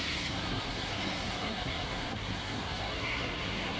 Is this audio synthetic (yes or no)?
yes